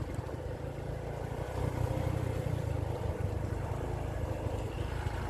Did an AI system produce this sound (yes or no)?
yes